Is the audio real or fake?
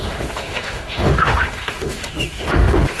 fake